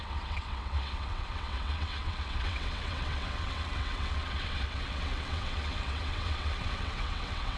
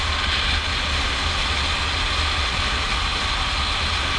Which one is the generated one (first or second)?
first